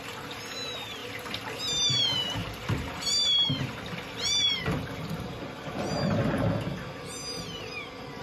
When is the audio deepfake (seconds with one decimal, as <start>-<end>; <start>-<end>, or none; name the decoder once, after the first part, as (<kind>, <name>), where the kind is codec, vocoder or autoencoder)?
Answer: 2.4-5.4 (vocoder, BigVGAN v2)

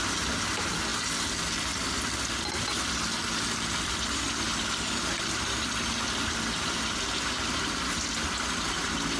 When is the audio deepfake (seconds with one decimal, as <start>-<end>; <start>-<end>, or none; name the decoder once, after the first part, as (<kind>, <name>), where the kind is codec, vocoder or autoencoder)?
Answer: none

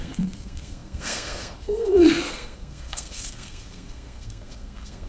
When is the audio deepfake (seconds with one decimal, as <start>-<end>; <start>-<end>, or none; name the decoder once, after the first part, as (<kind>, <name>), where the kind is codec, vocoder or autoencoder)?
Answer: 0.0-5.1 (codec, SNAC)

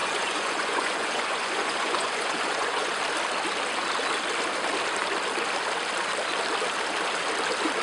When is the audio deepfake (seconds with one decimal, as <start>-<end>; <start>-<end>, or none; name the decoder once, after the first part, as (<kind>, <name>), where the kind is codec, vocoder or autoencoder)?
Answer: 0.0-3.0 (vocoder, Vocos)

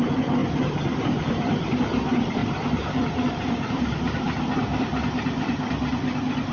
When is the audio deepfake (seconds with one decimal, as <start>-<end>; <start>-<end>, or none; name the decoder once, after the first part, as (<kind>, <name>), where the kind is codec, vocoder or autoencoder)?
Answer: 0.0-0.4 (vocoder, BigVGAN v2); 1.0-2.4; 3.1-4.9

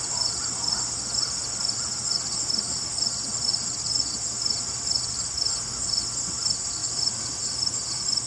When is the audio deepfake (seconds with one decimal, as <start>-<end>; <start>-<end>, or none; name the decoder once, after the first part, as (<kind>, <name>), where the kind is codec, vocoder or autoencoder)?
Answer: none